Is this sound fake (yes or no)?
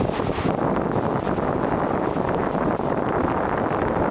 no